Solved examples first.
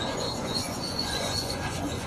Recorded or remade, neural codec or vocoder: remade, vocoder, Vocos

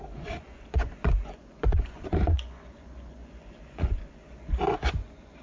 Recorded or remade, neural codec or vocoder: remade, vocoder, Vocos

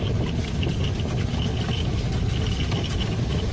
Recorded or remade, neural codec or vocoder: recorded